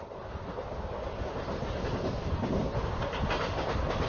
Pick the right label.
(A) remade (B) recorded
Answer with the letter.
B